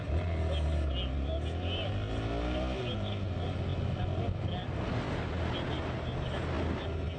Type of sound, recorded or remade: recorded